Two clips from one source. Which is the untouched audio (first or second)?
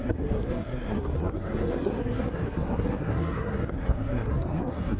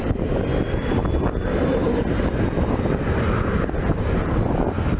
second